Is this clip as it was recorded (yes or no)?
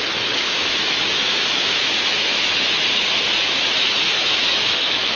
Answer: no